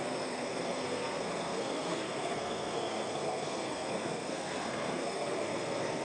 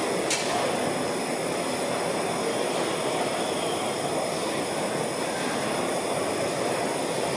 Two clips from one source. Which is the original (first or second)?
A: second